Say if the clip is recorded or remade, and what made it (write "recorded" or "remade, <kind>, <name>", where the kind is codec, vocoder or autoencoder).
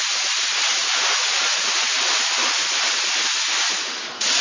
recorded